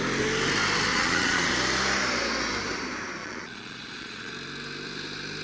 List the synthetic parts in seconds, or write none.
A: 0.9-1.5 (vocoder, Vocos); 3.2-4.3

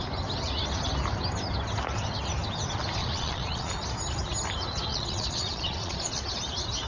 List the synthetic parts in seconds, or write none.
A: 3.0-3.7 (vocoder, Vocos); 4.9-6.1

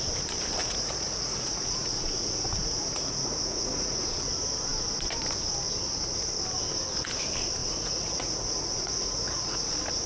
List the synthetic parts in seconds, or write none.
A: 0.6-4.3 (vocoder, Vocos); 7.6-9.7

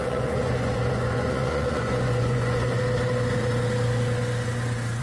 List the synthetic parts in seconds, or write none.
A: 0.0-2.8 (vocoder, Vocos)

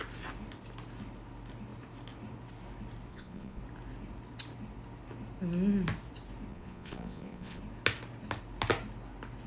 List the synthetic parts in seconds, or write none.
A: 3.1-3.6 (vocoder, Vocos); 6.5-7.6